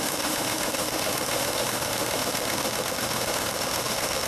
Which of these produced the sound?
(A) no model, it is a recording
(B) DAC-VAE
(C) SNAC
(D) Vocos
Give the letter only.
B